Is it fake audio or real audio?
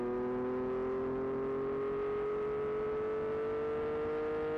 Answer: real